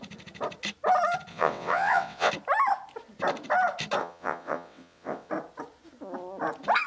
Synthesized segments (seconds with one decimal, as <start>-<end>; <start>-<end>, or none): 1.3-2.3; 4.0-5.3